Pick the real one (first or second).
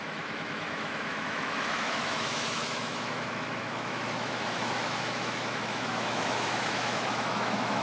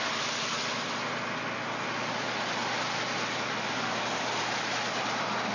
second